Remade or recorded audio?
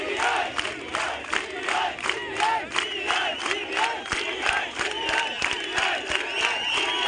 recorded